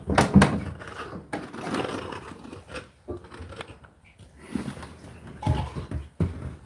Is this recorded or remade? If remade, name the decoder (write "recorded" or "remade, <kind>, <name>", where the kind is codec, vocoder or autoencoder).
recorded